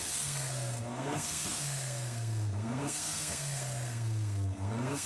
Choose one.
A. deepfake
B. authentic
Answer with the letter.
A